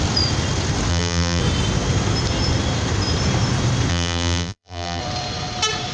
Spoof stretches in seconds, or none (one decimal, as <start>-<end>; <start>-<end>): 0.9-1.4; 3.9-5.0